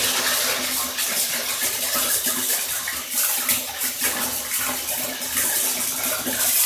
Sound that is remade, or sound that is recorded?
recorded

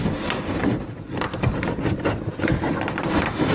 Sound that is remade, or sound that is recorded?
recorded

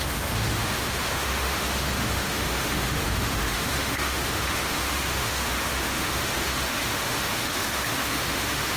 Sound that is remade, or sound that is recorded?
remade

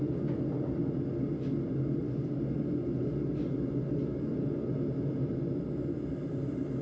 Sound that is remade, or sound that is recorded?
recorded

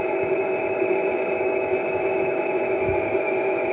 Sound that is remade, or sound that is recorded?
remade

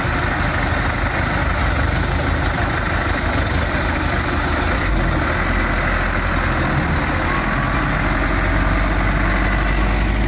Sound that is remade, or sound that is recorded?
recorded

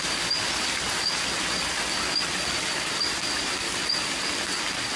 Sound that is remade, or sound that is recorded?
recorded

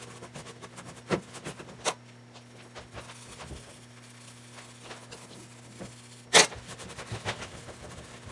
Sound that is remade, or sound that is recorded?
recorded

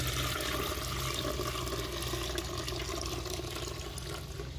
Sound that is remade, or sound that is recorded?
recorded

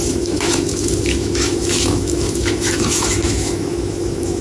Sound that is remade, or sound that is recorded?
remade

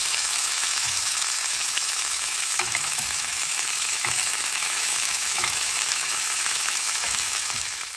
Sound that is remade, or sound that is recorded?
remade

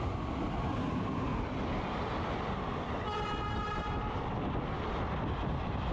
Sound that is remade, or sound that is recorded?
recorded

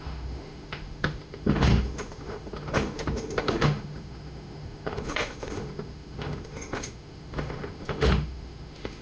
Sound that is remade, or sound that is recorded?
remade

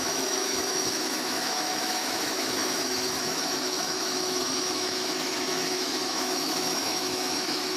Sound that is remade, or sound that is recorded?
remade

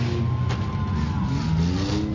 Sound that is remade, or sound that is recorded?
recorded